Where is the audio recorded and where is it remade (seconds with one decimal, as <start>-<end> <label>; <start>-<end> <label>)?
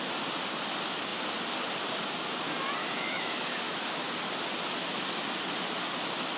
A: 0.0-2.8 recorded; 2.8-4.0 remade; 4.0-6.4 recorded